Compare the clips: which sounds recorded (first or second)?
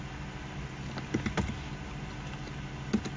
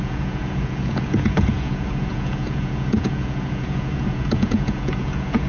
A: first